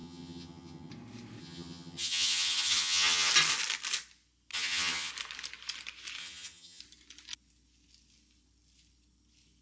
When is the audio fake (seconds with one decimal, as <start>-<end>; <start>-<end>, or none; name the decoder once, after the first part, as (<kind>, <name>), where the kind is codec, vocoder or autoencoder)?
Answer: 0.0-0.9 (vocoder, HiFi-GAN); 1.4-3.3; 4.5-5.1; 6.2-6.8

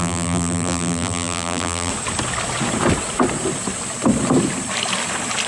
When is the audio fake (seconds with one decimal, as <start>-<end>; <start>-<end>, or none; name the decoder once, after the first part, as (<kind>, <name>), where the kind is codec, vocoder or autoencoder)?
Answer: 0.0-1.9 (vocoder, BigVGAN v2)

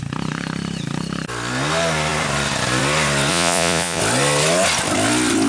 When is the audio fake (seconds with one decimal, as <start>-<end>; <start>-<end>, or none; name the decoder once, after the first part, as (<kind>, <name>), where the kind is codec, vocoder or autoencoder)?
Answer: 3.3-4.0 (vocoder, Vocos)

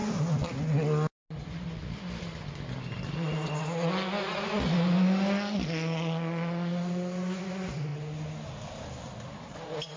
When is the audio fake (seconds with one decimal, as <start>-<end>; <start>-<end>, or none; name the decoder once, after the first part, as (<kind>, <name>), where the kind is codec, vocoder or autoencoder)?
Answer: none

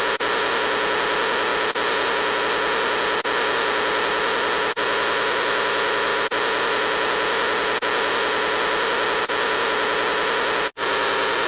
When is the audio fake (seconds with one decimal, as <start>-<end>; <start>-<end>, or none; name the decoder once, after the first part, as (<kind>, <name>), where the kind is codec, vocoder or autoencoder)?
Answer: none

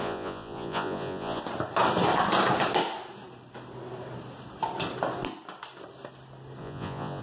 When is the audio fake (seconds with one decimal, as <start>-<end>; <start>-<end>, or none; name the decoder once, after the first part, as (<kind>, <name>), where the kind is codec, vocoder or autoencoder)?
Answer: 0.0-1.4 (vocoder, Vocos); 6.6-7.2

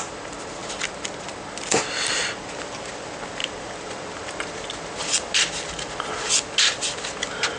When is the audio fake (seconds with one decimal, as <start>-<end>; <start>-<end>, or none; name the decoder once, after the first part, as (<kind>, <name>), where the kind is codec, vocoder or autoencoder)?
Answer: none

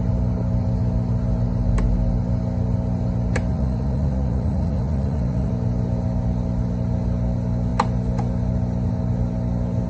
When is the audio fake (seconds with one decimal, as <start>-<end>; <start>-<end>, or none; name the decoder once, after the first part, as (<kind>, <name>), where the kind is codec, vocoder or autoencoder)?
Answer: 3.5-5.5 (vocoder, Vocos)